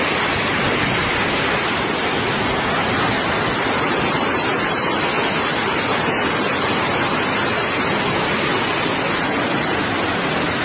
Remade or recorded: recorded